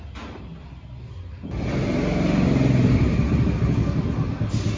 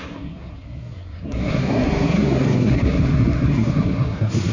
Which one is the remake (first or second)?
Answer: second